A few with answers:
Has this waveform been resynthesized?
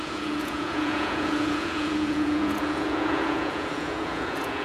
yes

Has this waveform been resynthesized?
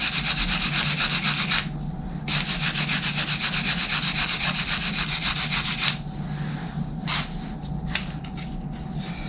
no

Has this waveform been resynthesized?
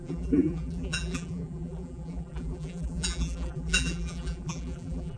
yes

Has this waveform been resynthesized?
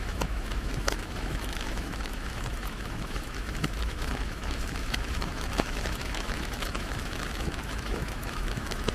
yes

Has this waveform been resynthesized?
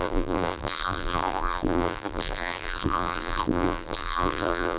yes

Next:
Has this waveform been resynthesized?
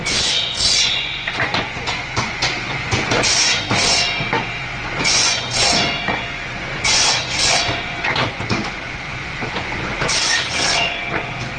yes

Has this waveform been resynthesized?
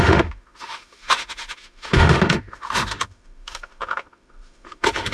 yes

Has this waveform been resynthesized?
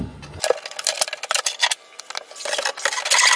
no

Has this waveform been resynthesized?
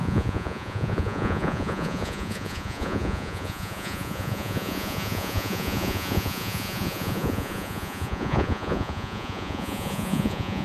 yes